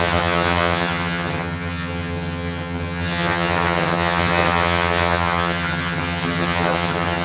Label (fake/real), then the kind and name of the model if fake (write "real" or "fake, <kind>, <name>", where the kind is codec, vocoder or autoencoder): fake, vocoder, HiFi-GAN